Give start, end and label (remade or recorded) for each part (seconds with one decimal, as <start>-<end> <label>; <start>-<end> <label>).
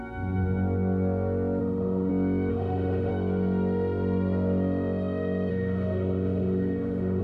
0.0-1.6 recorded; 1.6-2.1 remade; 2.1-2.5 recorded; 2.5-3.1 remade; 3.1-5.5 recorded; 5.5-7.2 remade